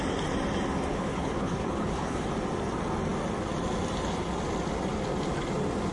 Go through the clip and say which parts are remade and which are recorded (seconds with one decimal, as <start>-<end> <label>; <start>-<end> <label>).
0.0-0.9 recorded; 0.9-2.3 remade; 2.3-5.9 recorded